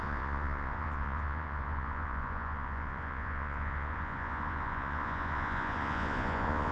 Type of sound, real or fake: fake